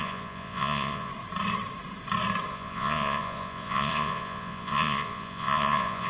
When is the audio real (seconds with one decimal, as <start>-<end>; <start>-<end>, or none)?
1.1-2.5